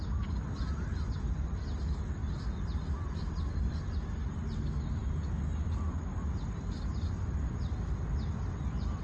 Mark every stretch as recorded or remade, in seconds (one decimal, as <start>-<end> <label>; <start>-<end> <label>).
0.0-9.0 recorded